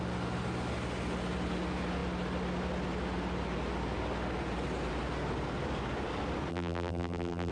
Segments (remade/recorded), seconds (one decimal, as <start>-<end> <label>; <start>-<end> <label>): 0.0-6.5 recorded; 6.5-7.5 remade